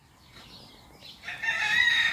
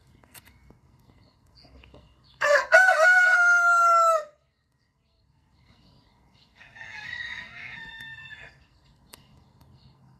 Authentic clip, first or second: first